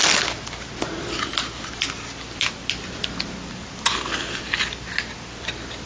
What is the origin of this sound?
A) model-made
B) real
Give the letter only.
B